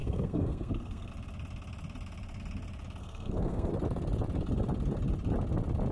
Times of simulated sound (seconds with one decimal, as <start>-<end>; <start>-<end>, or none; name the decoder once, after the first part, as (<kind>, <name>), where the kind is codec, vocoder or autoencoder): 0.0-1.1 (codec, SNAC); 3.0-3.7